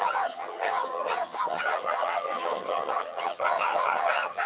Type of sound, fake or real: fake